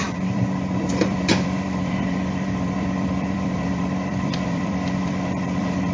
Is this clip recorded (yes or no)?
no